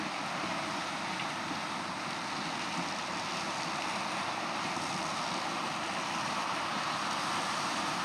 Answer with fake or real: real